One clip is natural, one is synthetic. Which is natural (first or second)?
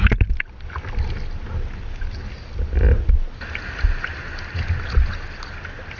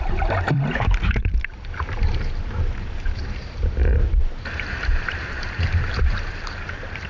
first